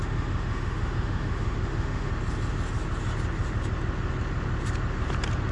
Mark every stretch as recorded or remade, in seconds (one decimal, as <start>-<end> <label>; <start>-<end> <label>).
0.0-2.1 remade; 2.1-5.5 recorded